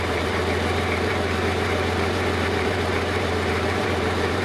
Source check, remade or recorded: remade